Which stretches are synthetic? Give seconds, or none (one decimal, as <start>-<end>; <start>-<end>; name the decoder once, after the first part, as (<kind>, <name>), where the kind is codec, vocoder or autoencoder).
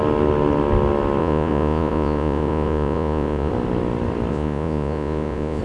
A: 1.2-3.5 (vocoder, Vocos); 4.3-5.6